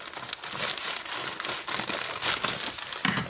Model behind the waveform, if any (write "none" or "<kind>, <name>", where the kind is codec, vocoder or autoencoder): none